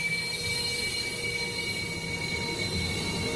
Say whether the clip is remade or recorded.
recorded